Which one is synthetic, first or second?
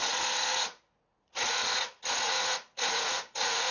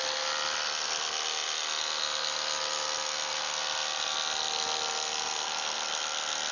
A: first